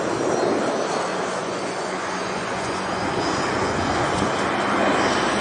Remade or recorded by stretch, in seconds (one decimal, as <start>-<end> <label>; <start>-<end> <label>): 0.0-1.1 recorded; 1.1-4.3 remade; 4.3-5.4 recorded